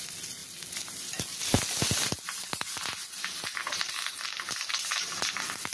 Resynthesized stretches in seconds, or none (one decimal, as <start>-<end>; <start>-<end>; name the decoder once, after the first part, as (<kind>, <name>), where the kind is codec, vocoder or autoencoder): none